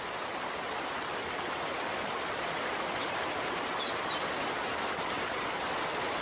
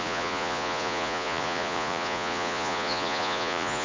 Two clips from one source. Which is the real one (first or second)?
first